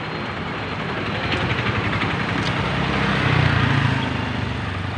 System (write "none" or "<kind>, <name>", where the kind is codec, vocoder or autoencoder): none